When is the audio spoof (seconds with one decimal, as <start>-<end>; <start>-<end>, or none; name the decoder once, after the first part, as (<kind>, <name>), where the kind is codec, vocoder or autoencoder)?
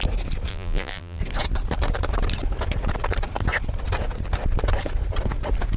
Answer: 0.5-1.2 (vocoder, BigVGAN v2)